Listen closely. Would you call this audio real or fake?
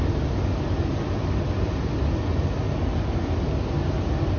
real